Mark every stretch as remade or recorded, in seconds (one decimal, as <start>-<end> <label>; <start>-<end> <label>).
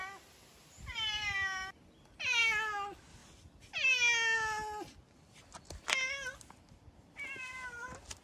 0.0-8.2 recorded